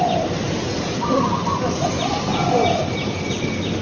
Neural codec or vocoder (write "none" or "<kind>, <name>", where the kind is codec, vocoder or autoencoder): none